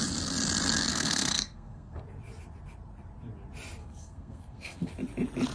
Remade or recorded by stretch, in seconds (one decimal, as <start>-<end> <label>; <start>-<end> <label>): 0.0-0.9 recorded; 0.9-2.0 remade; 2.0-3.8 recorded; 3.8-4.9 remade; 4.9-5.5 recorded